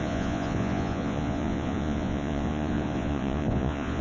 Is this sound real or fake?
fake